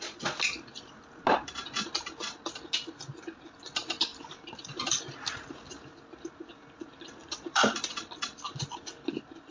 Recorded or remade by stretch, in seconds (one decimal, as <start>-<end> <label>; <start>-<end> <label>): 0.0-4.1 recorded; 4.1-5.0 remade; 5.0-7.2 recorded; 7.2-8.7 remade; 8.7-9.5 recorded